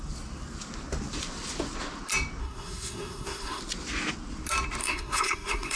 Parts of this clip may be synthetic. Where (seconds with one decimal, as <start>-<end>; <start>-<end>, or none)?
2.4-3.6; 4.8-5.8